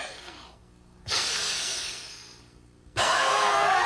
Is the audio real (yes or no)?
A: no